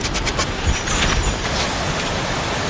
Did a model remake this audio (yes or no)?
no